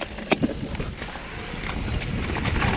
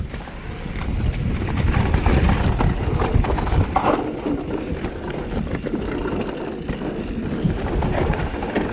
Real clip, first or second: first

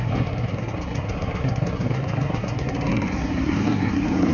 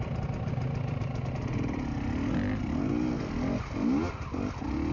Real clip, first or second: second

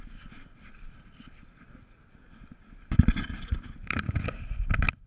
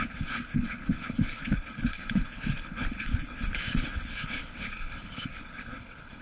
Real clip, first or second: first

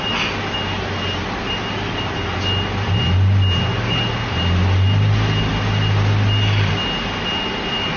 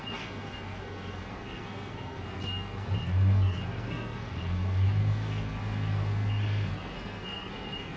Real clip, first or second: first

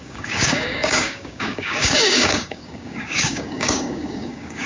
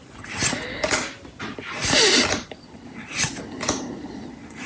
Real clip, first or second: second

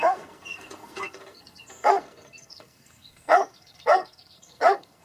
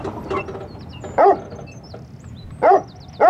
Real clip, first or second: second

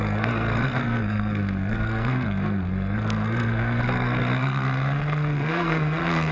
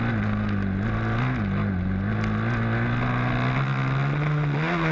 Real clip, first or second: second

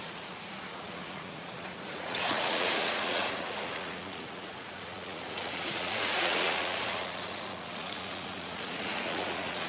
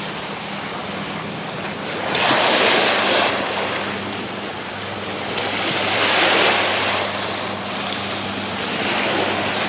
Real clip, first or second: second